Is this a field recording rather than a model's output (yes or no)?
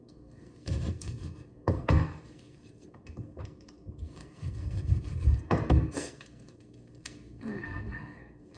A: no